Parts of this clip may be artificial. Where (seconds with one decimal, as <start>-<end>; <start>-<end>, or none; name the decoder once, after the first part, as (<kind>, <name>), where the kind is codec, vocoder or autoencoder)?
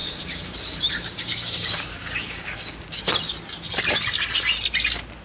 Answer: 0.0-3.1 (codec, DAC)